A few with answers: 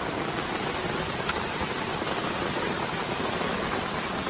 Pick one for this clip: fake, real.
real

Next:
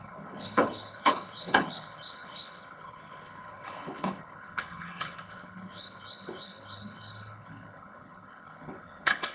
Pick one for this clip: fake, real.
fake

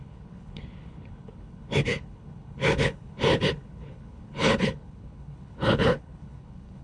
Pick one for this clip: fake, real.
fake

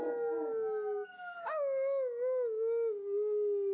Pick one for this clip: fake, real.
real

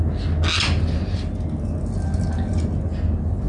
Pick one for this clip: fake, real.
real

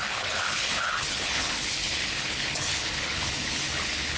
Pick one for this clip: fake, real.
fake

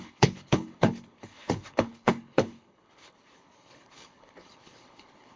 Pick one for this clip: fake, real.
fake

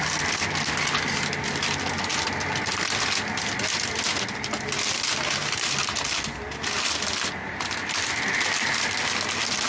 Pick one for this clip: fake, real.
real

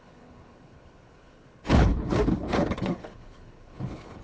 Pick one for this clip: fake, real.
fake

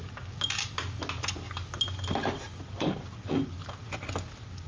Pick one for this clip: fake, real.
real